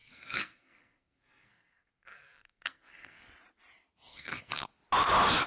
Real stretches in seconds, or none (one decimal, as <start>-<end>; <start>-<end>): 3.3-4.1; 4.7-5.5